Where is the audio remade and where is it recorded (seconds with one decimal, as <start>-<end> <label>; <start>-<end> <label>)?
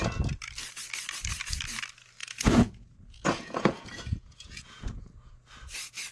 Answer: 0.0-2.2 recorded; 2.2-5.3 remade; 5.3-6.1 recorded